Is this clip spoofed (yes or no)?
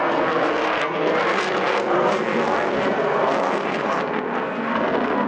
yes